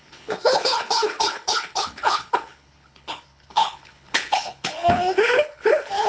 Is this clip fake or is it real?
fake